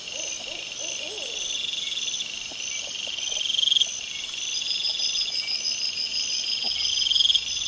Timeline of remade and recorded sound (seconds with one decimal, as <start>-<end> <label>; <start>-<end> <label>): 0.0-7.7 recorded